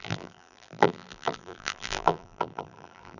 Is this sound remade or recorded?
remade